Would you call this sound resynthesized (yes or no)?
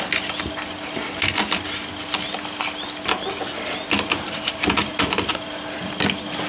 no